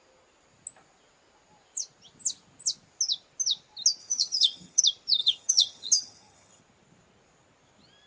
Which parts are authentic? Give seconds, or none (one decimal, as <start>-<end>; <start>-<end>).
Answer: 0.0-4.0; 4.8-5.2; 6.6-8.1